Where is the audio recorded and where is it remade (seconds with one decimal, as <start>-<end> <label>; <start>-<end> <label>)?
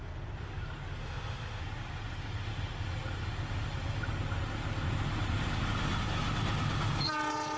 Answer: 0.0-1.0 recorded; 1.0-1.6 remade; 1.6-7.6 recorded